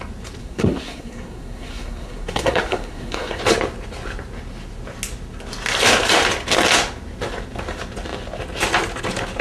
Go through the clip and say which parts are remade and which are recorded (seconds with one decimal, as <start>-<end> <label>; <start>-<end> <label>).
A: 0.0-0.4 recorded; 0.4-3.4 remade; 3.4-9.4 recorded